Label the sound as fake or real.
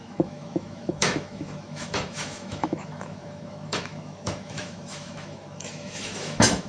fake